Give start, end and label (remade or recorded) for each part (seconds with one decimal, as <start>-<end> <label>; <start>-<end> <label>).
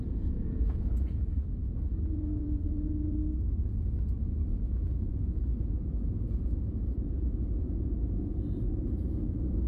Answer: 0.0-3.2 remade; 3.2-4.3 recorded; 4.3-9.7 remade